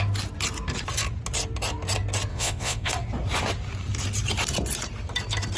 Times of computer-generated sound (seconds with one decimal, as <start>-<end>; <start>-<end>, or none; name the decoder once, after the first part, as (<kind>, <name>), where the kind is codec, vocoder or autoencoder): 2.3-2.9 (vocoder, Vocos)